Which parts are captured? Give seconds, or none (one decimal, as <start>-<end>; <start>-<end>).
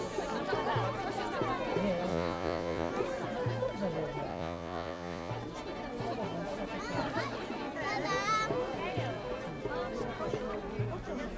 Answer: 0.0-2.1; 2.9-4.3; 5.3-11.4